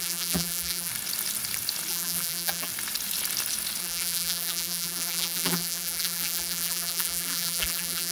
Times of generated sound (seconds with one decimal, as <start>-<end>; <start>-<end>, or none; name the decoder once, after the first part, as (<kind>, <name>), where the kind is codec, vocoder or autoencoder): 0.0-0.9 (vocoder, BigVGAN v2); 1.9-2.7; 3.8-8.1